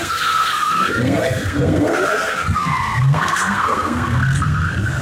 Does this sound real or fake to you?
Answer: fake